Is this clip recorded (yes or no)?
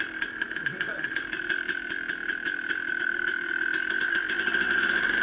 yes